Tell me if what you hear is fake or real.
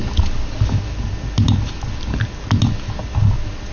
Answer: real